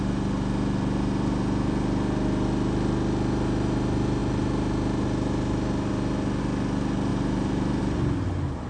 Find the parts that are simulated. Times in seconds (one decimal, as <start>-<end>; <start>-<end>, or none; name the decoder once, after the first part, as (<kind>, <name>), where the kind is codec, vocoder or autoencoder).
7.1-7.8 (vocoder, BigVGAN v2)